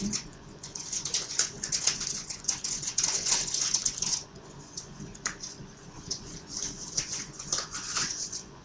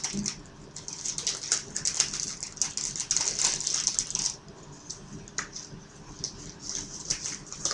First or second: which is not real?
first